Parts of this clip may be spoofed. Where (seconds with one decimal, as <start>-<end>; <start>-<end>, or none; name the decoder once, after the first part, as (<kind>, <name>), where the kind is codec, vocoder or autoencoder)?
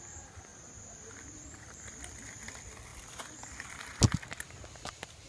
0.5-2.5 (vocoder, BigVGAN v2); 2.9-3.8